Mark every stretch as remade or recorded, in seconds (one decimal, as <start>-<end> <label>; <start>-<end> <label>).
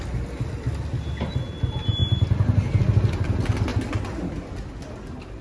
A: 0.0-5.4 recorded